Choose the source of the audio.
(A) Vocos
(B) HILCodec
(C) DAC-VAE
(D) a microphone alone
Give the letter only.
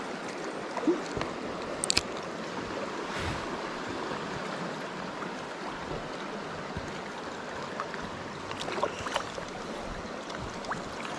D